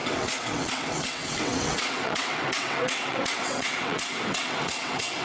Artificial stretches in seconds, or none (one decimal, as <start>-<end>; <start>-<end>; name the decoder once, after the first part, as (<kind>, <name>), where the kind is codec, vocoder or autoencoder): 0.0-5.2 (vocoder, WaveNeXt)